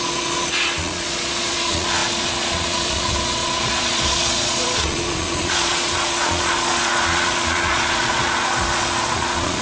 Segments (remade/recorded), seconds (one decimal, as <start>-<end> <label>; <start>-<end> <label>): 0.0-9.6 remade